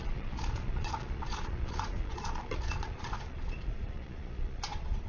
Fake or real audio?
fake